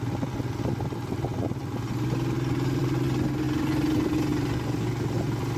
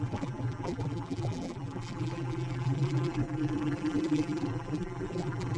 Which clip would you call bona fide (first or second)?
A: first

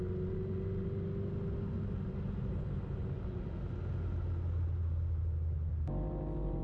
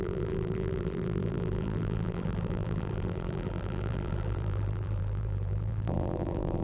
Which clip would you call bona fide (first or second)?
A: first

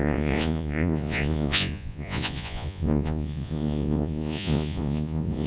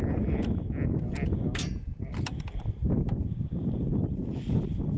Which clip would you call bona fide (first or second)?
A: second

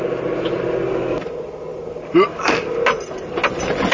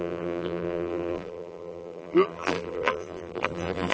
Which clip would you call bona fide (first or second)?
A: first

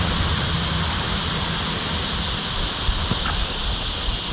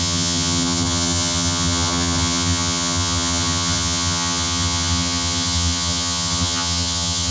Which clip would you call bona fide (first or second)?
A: first